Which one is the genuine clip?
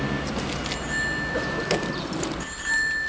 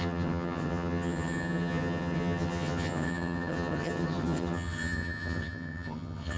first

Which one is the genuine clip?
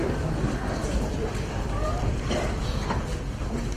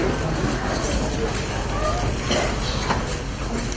second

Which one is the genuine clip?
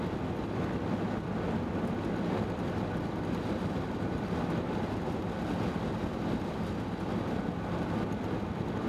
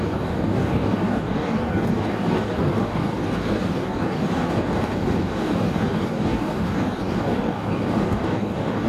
first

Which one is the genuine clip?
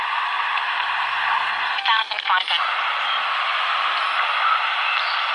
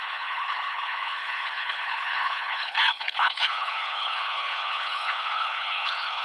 first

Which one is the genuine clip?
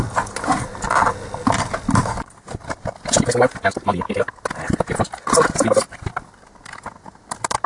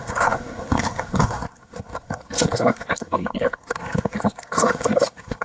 first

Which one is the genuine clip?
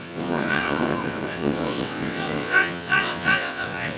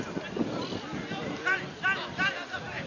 second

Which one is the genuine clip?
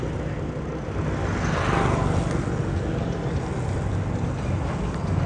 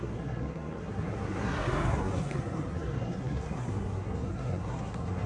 first